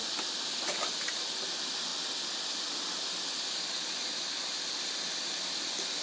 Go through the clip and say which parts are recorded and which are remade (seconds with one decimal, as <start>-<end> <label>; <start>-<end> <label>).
0.0-6.0 recorded